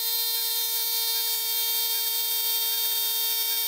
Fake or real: real